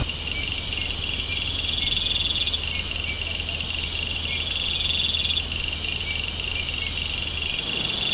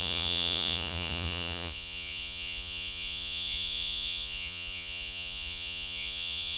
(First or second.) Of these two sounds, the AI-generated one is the second